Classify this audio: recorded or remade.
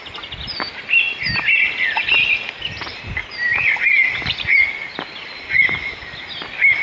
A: recorded